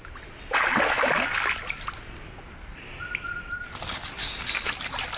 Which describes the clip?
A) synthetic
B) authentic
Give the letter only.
B